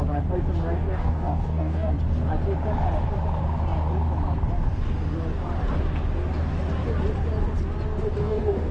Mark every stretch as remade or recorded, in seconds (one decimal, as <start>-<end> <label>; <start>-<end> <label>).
0.0-0.6 recorded; 0.6-1.9 remade; 1.9-8.2 recorded; 8.2-8.7 remade